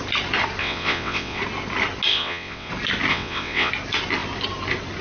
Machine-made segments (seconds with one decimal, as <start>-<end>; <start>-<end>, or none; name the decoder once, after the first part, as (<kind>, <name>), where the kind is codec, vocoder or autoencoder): 0.6-1.4 (vocoder, WaveNeXt); 2.1-2.7; 3.1-3.7